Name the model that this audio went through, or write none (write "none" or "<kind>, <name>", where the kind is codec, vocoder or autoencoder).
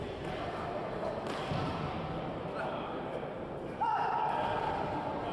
none